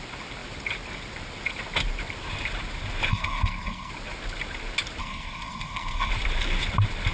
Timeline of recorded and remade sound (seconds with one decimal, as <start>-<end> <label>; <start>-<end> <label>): 0.0-3.1 recorded; 3.1-3.9 remade; 3.9-5.0 recorded; 5.0-6.1 remade; 6.1-7.1 recorded